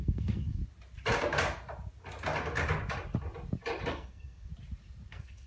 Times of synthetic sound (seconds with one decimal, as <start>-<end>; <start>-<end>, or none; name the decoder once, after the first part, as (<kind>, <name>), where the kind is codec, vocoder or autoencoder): 0.0-0.6 (codec, SNAC); 3.9-4.5; 5.1-5.5